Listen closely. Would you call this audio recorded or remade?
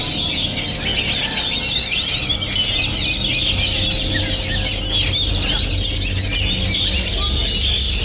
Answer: recorded